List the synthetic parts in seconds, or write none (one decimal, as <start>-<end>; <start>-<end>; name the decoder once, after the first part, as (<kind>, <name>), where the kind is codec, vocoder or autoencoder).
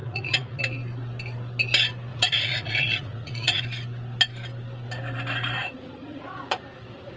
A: 0.0-0.6 (vocoder, Vocos); 2.1-3.6; 5.6-6.6